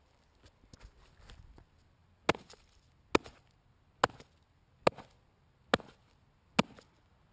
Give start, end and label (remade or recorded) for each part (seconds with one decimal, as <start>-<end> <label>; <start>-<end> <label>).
0.0-7.3 recorded